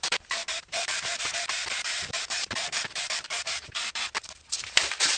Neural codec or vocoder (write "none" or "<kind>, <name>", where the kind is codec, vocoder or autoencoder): vocoder, BigVGAN v2